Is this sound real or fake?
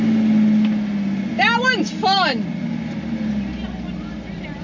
real